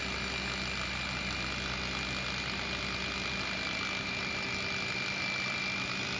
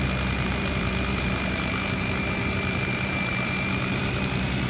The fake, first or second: second